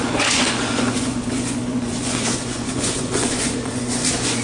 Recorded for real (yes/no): no